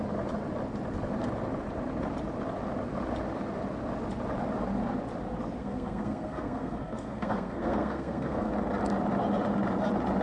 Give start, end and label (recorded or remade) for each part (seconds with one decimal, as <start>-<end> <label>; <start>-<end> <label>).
0.0-5.6 recorded; 5.6-8.5 remade; 8.5-10.2 recorded